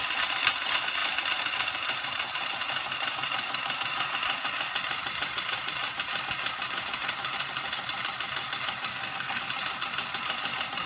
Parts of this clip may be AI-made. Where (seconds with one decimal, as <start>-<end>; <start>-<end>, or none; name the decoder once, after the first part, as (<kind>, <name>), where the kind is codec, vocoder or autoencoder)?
8.9-9.4 (codec, SNAC)